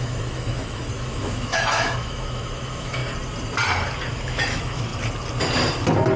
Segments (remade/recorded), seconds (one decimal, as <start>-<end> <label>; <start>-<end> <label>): 0.0-3.0 remade; 3.0-4.1 recorded; 4.1-4.9 remade; 4.9-6.2 recorded